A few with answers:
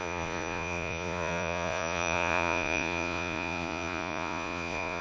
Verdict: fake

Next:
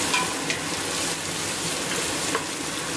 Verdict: real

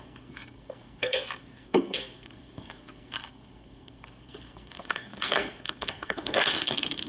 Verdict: fake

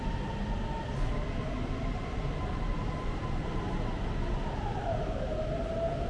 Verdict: real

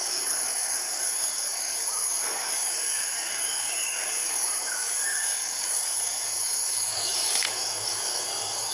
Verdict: fake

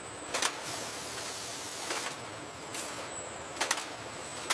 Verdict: real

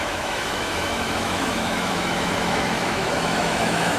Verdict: fake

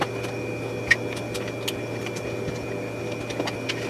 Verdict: real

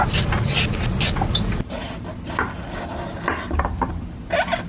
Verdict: real